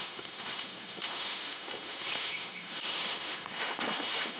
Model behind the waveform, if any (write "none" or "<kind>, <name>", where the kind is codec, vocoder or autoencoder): autoencoder, DAC-VAE